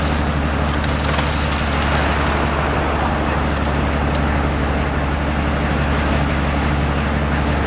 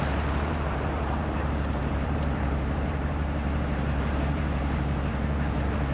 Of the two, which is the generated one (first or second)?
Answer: second